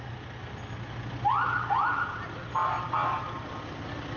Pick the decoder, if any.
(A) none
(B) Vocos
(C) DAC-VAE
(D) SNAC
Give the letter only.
A